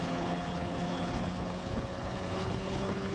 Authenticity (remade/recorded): remade